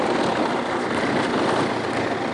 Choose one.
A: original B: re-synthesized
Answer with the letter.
B